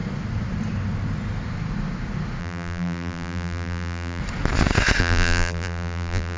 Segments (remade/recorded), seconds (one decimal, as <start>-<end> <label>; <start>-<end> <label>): 0.0-2.4 recorded; 2.4-4.2 remade; 4.2-5.0 recorded; 5.0-6.4 remade